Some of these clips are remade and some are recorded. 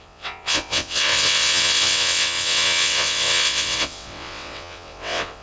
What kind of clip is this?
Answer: remade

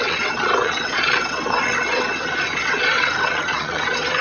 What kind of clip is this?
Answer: remade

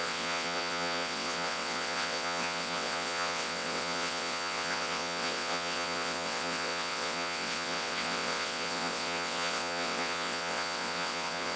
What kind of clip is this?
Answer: remade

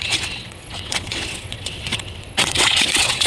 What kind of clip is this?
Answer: remade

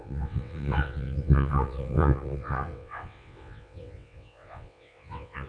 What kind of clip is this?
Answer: remade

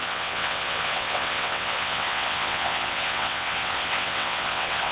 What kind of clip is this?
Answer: remade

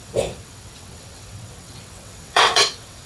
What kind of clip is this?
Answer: remade